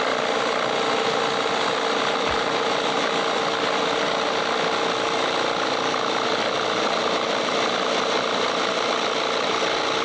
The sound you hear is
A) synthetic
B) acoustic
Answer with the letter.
B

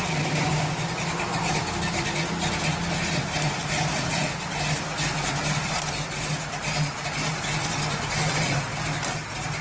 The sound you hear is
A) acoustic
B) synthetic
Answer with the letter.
A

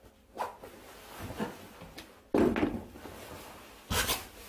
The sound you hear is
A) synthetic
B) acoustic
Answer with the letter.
B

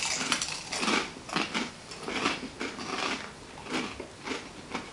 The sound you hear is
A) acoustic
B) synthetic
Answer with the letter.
A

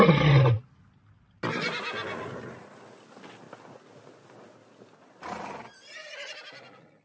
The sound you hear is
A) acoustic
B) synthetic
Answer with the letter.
A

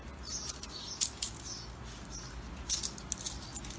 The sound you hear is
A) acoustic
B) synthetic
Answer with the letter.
A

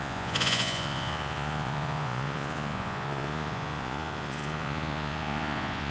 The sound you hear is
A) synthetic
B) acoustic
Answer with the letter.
A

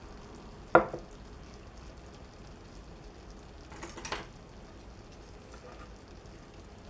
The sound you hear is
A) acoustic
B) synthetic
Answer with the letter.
A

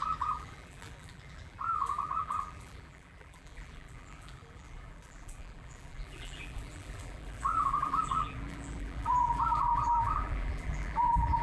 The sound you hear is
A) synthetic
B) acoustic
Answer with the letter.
A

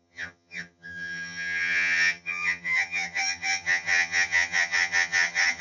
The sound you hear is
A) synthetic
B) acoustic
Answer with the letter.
A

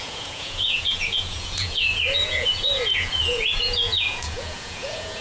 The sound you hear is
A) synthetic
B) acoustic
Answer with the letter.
A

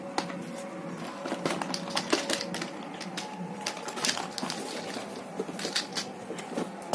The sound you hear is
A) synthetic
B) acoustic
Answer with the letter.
B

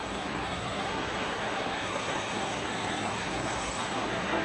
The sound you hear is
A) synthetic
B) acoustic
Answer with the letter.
A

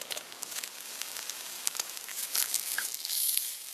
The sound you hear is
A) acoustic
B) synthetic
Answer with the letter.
B